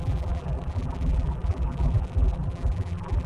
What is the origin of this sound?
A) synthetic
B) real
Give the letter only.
A